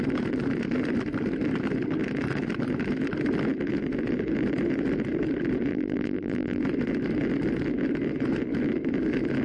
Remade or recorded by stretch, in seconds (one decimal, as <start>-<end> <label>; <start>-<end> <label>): 0.0-5.7 recorded; 5.7-6.6 remade; 6.6-9.4 recorded